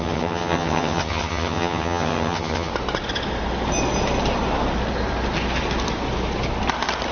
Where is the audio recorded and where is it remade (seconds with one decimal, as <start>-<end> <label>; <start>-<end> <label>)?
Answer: 0.0-2.7 remade; 2.7-7.1 recorded